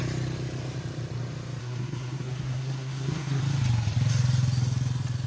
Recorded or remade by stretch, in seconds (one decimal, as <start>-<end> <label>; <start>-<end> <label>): 0.0-1.6 recorded; 1.6-3.4 remade; 3.4-5.3 recorded